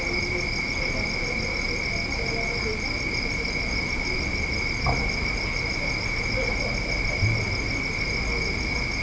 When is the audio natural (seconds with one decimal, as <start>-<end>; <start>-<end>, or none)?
0.0-9.0